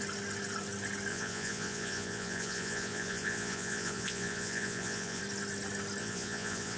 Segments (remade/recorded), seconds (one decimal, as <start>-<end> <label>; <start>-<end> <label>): 0.0-1.1 recorded; 1.1-5.2 remade; 5.2-6.0 recorded; 6.0-6.8 remade